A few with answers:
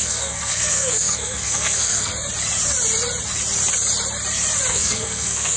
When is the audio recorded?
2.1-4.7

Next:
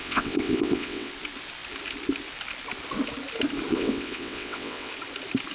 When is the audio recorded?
1.1-3.7; 4.9-5.5

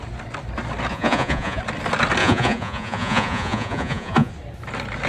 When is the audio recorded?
0.0-0.9; 1.6-2.2; 4.3-5.1

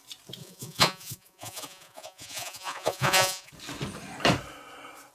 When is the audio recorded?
0.0-0.4; 3.5-5.1

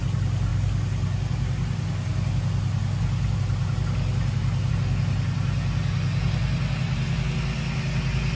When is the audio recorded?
0.0-8.3

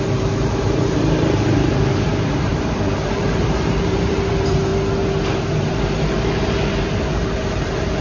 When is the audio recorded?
4.7-5.7

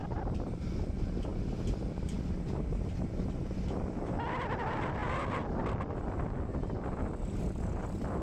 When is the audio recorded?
0.6-1.3; 2.4-8.2